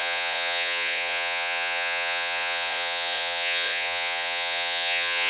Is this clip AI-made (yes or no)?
yes